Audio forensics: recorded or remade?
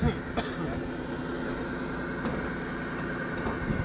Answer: recorded